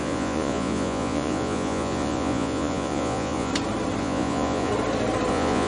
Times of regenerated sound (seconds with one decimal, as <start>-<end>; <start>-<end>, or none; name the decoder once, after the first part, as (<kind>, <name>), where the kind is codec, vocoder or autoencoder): 0.0-3.5 (vocoder, Vocos); 4.0-4.7; 5.3-5.7